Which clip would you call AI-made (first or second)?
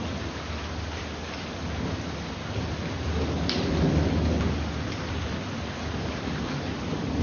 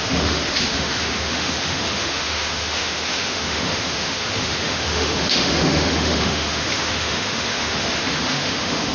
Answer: second